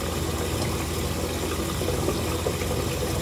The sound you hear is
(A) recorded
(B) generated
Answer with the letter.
A